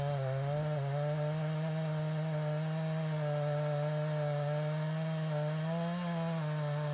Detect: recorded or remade recorded